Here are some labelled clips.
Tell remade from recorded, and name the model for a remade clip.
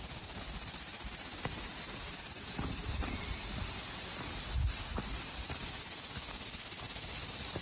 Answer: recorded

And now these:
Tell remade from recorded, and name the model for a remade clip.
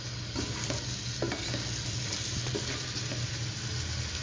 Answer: recorded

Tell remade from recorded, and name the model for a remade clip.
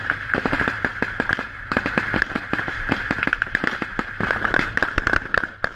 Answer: remade, vocoder, BigVGAN v2